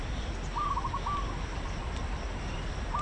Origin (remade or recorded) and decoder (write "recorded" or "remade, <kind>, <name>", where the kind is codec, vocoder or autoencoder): recorded